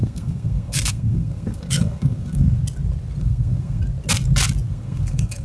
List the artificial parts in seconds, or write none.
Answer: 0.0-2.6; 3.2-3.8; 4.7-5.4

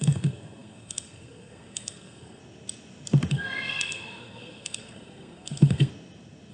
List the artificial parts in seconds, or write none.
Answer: 0.0-2.4; 3.3-5.9

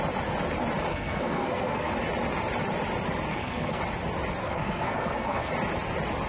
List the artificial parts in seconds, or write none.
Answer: 0.9-1.9; 3.3-3.8; 4.4-5.5

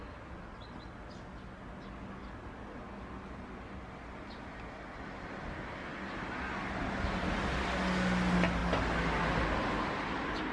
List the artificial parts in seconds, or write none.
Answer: none

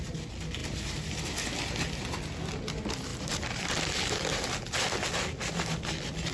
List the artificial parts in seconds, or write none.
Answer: none

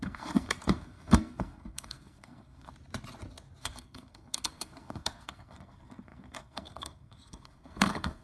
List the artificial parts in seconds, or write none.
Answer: 0.0-2.7; 3.6-8.2

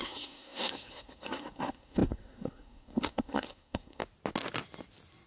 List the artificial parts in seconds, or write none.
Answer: 0.0-4.0

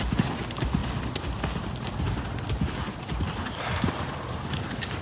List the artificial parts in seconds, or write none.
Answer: none